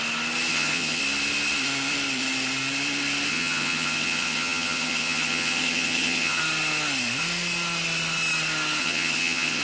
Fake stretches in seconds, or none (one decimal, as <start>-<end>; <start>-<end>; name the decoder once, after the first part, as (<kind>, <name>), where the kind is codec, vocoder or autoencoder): 0.5-1.0 (vocoder, HiFi-GAN); 3.3-6.4; 8.8-9.6